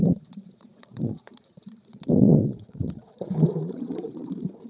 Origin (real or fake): fake